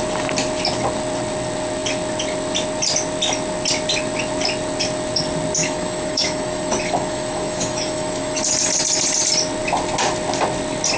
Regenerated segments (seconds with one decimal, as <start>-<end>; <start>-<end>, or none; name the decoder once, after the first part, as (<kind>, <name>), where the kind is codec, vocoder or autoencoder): 5.6-8.4 (autoencoder, DAC-VAE)